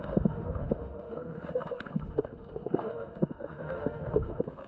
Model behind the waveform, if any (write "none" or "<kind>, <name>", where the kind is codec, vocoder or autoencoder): autoencoder, DAC-VAE